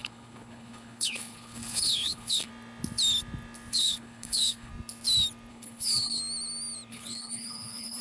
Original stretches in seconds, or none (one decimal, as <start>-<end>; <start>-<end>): 2.5-3.7; 4.7-5.5; 6.2-6.9